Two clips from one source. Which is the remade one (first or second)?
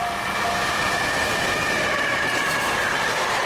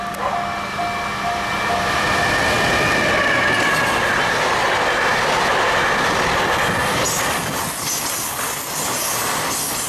first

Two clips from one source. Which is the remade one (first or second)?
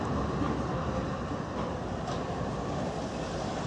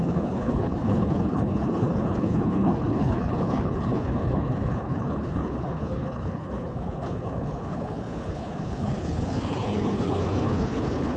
second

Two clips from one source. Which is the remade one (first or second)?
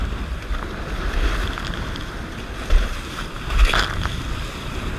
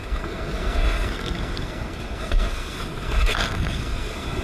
second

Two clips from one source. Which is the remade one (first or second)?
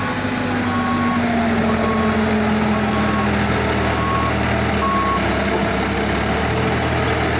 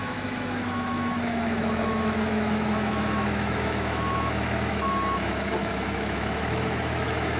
second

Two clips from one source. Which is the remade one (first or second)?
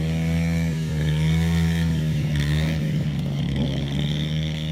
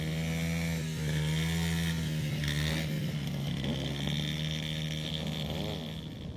first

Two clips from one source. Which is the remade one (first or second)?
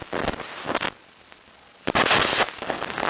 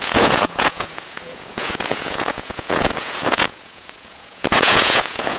second